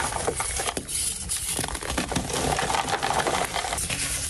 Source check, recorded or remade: remade